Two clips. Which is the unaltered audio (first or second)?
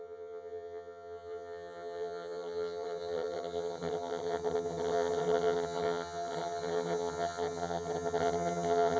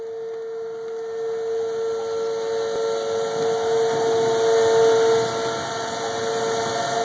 second